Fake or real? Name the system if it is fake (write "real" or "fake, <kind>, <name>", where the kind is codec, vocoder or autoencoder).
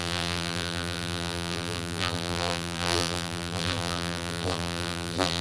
fake, vocoder, BigVGAN v2